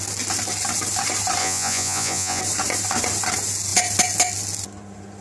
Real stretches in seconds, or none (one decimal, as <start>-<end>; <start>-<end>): 0.0-1.4; 2.4-5.2